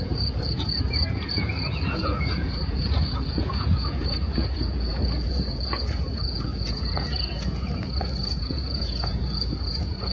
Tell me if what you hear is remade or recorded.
remade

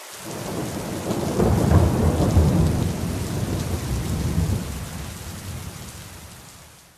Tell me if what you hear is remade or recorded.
recorded